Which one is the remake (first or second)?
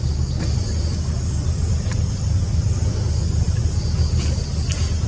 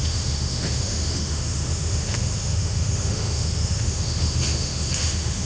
second